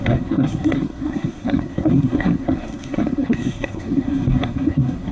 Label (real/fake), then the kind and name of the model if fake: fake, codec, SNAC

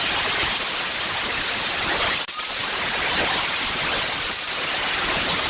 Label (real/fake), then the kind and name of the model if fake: real